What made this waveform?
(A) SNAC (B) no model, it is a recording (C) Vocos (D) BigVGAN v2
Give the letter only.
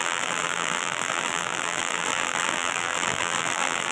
D